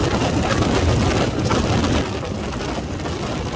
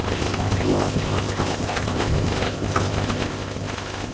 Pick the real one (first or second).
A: first